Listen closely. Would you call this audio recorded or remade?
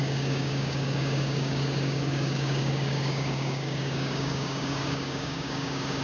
remade